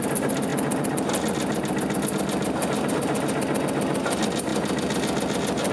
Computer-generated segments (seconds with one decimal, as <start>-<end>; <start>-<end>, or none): none